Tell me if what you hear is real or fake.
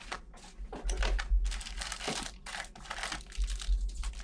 real